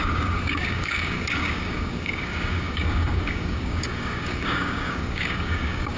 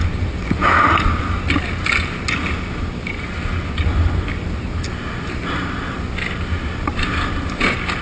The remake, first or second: first